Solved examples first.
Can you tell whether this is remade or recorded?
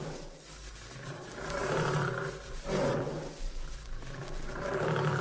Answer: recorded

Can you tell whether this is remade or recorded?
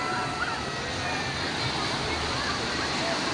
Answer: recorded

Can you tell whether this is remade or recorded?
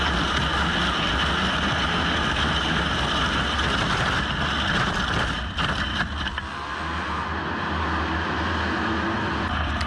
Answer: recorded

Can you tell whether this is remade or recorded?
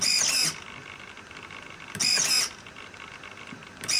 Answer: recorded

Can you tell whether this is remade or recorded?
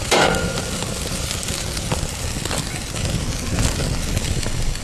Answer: remade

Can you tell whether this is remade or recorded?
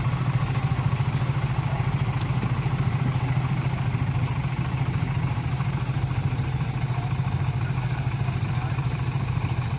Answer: remade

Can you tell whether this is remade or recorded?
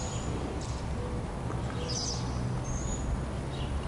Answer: recorded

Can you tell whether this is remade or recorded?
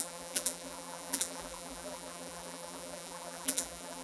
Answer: remade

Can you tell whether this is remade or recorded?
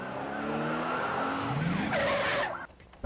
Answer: recorded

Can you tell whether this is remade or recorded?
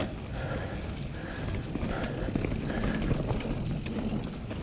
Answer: recorded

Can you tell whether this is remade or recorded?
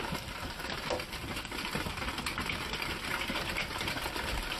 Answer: recorded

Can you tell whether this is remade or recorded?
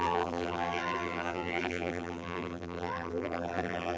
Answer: remade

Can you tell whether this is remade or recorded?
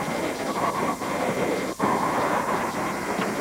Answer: remade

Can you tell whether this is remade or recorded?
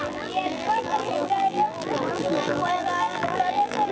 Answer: remade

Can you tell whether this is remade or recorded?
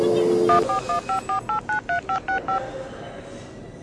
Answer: recorded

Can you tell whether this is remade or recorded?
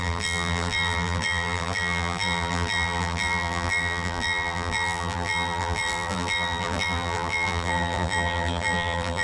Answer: remade